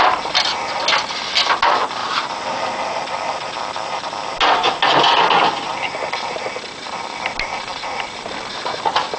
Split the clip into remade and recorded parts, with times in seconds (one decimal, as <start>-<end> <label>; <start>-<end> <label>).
0.0-2.0 recorded; 2.0-2.6 remade; 2.6-9.2 recorded